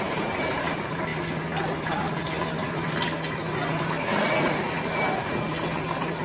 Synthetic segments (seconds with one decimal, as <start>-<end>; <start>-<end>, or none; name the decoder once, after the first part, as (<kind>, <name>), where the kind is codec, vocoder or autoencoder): none